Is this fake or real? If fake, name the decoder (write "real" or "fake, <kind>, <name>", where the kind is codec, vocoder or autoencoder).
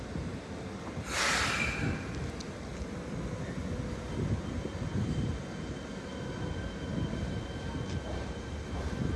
real